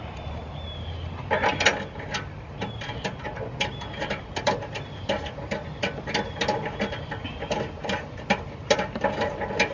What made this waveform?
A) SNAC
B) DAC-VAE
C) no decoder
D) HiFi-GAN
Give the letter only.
C